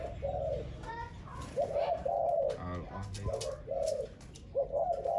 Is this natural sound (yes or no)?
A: yes